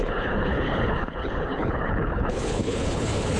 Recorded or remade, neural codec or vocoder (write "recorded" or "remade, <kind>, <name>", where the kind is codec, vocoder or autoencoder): remade, codec, HILCodec